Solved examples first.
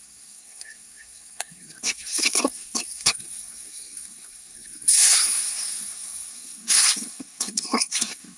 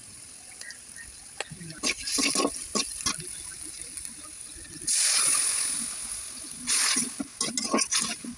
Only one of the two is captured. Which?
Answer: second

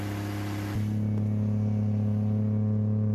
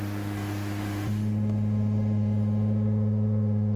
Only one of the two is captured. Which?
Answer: first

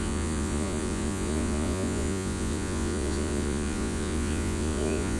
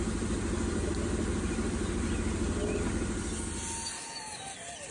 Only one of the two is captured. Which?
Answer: second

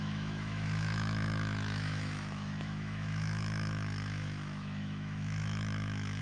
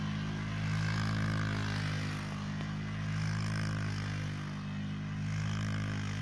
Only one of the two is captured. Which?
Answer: second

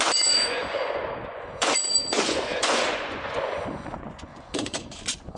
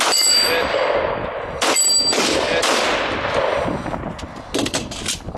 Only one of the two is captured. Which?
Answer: second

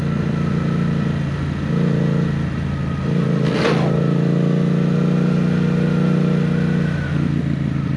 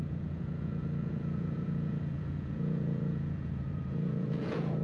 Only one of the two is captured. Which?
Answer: first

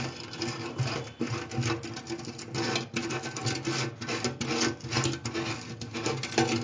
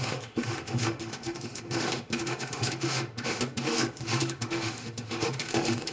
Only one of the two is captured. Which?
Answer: first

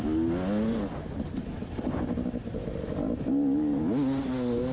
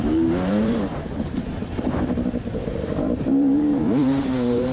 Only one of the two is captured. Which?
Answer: first